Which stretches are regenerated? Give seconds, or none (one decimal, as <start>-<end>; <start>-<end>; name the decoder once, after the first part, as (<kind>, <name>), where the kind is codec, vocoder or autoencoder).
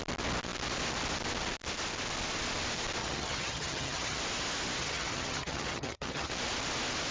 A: 3.0-4.2 (vocoder, HiFi-GAN); 4.8-6.3